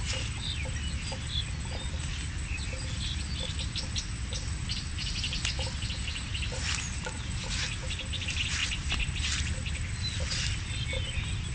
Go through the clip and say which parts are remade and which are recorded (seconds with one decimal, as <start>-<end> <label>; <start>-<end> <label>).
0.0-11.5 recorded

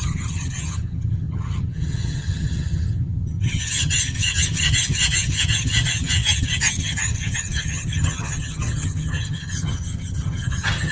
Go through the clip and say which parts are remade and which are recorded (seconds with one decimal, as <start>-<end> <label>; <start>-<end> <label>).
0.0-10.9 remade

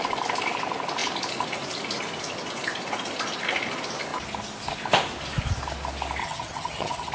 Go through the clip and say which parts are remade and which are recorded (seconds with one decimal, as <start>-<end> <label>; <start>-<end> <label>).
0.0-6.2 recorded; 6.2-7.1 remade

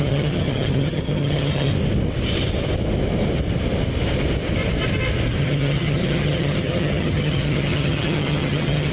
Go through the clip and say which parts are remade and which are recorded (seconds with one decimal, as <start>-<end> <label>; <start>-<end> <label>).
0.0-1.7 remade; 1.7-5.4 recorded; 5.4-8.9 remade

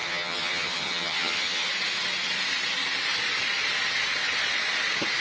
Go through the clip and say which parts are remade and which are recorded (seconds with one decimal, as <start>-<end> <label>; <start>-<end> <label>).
0.0-1.7 remade; 1.7-5.2 recorded

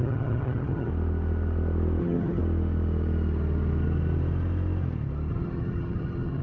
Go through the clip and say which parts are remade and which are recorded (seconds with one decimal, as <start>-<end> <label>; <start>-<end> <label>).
0.0-0.9 remade; 0.9-2.0 recorded; 2.0-2.4 remade; 2.4-5.3 recorded; 5.3-6.4 remade

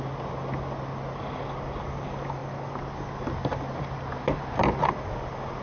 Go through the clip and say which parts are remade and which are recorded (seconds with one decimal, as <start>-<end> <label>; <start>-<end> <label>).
0.0-5.6 recorded